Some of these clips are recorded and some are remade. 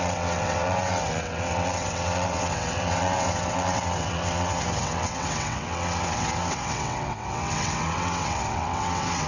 remade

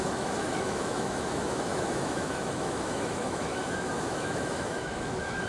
remade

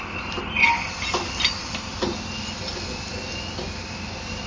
recorded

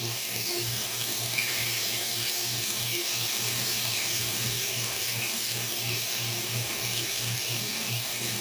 remade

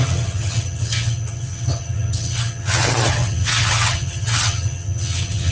remade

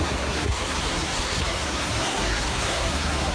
remade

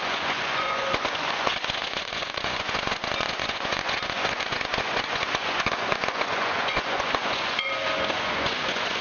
remade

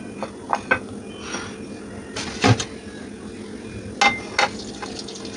recorded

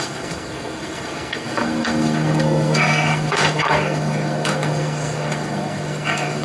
remade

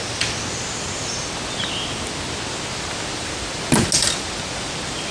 recorded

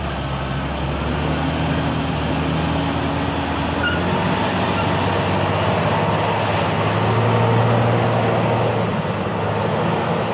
recorded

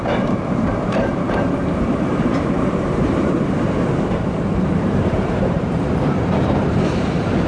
remade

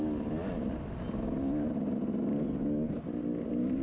recorded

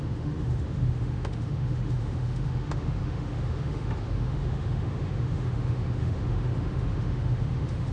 remade